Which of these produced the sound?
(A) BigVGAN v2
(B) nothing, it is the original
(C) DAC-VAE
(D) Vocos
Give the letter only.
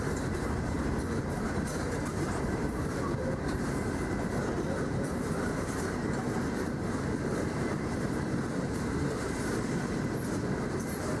A